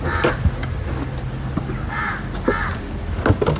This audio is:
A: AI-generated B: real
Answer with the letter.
B